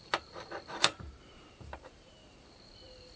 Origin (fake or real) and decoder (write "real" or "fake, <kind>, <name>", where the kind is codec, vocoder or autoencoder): fake, vocoder, BigVGAN v2